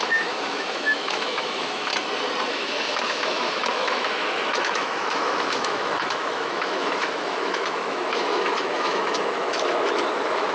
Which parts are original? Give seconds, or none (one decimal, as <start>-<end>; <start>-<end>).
1.9-2.5